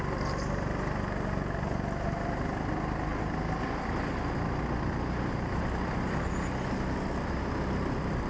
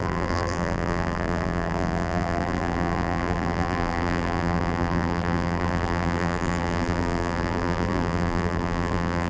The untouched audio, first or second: first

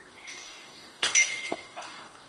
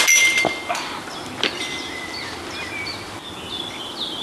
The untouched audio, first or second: second